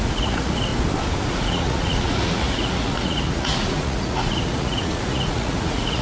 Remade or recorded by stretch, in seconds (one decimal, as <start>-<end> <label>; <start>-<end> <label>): 0.0-0.7 remade; 0.7-1.3 recorded; 1.3-6.0 remade